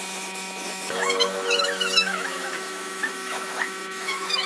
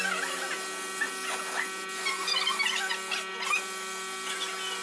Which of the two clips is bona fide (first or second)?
second